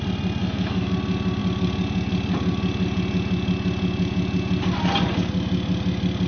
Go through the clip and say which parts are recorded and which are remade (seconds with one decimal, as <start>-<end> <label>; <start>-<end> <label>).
0.0-0.4 recorded; 0.4-0.9 remade; 0.9-6.3 recorded